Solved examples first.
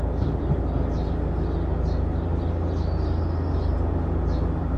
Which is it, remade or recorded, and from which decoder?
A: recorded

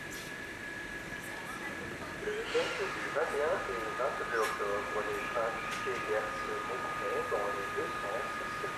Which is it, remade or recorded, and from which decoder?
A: recorded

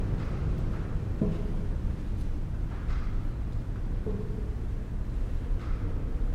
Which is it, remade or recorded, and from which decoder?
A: recorded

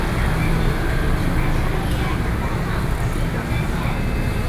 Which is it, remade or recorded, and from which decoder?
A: recorded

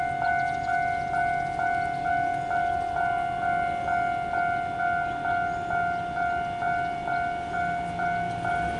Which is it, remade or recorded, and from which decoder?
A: recorded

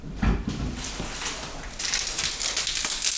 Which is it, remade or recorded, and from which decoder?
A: recorded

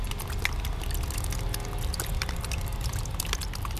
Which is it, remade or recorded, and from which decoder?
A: recorded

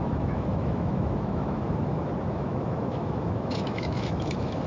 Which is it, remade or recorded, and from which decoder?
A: remade, autoencoder, DAC-VAE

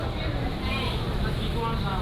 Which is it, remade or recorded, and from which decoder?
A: recorded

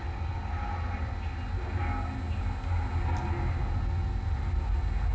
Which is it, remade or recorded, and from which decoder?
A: recorded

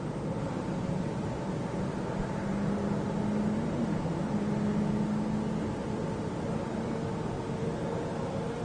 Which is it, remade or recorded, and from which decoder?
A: recorded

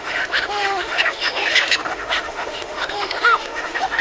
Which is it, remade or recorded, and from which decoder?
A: remade, autoencoder, DAC-VAE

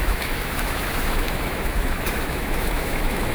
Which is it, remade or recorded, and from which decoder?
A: remade, autoencoder, DAC-VAE